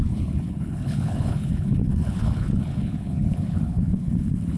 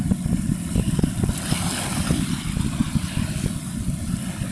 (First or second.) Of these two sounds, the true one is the second